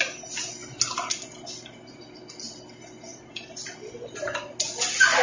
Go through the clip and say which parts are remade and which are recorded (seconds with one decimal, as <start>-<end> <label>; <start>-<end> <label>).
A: 0.0-3.1 recorded; 3.1-3.9 remade; 3.9-5.2 recorded